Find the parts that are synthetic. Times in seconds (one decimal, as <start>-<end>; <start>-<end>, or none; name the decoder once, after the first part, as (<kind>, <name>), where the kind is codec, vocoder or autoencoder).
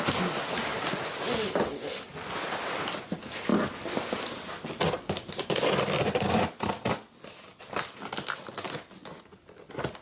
3.5-5.7 (vocoder, BigVGAN v2)